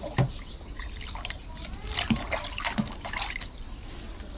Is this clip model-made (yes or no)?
no